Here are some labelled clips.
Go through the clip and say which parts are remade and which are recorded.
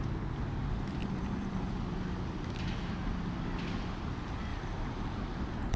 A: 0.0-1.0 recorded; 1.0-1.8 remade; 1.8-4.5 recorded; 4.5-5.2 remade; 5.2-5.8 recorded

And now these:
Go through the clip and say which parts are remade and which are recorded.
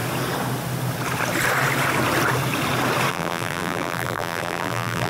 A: 0.0-3.1 recorded; 3.1-5.1 remade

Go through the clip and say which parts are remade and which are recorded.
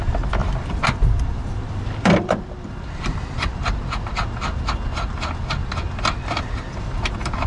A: 0.0-0.4 recorded; 0.4-3.6 remade; 3.6-7.5 recorded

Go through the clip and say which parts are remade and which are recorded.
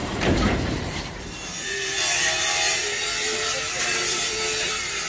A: 0.0-5.1 remade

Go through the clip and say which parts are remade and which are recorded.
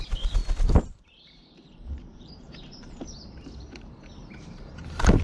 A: 0.0-0.4 remade; 0.4-0.9 recorded; 0.9-5.2 remade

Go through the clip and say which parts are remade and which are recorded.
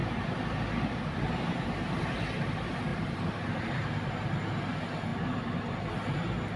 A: 0.0-2.2 remade; 2.2-2.9 recorded; 2.9-3.9 remade; 3.9-6.6 recorded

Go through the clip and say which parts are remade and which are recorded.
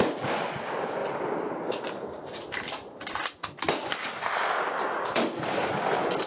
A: 0.0-6.3 recorded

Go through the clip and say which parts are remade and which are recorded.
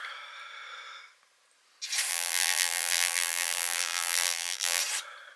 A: 0.0-2.1 recorded; 2.1-4.8 remade; 4.8-5.4 recorded